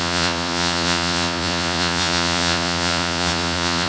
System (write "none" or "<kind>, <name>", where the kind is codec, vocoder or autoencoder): vocoder, Vocos